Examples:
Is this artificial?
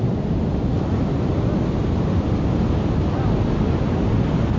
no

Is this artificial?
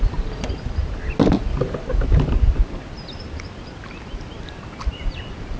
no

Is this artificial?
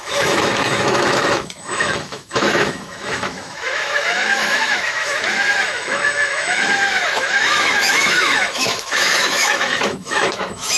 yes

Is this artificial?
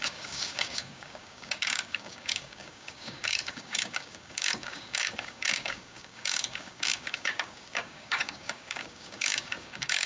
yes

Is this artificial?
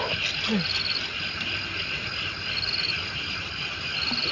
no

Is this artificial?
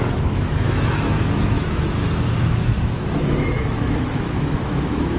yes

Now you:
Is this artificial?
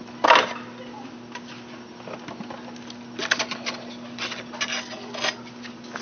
no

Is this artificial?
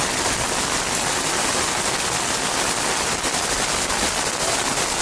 no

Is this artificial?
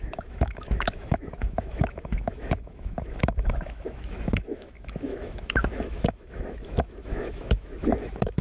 yes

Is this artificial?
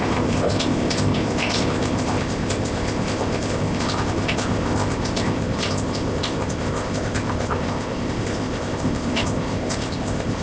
yes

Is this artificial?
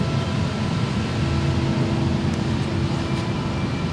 no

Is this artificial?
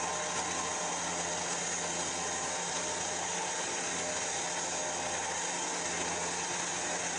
no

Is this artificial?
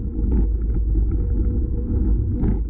no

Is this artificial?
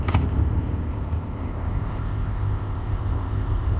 yes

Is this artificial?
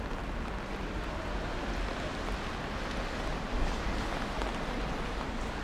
no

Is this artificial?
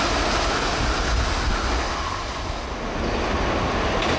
no